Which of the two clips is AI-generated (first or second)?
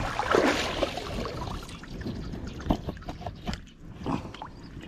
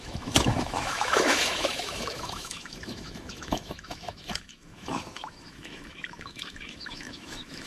second